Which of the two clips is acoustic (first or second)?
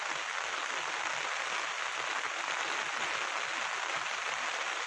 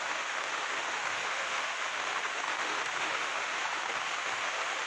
first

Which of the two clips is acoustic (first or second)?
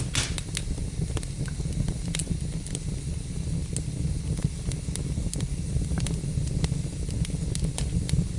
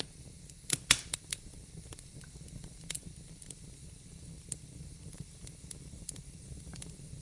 first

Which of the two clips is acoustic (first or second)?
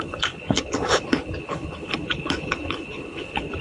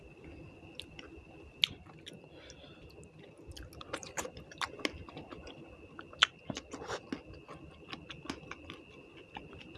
second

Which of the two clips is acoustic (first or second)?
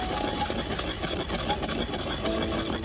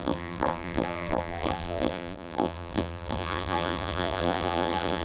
first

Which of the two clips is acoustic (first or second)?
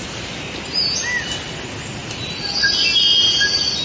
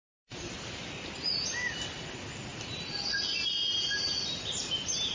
first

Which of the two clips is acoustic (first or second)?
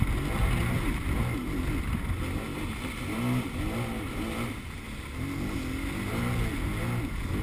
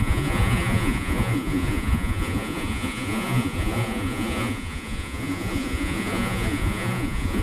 first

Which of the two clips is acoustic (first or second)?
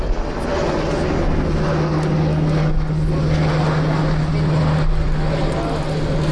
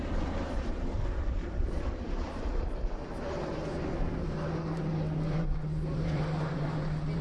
first